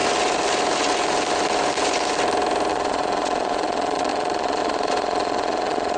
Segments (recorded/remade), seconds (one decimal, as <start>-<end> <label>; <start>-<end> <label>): 0.0-2.7 recorded; 2.7-6.0 remade